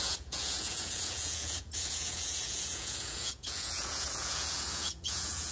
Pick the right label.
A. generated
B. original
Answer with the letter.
A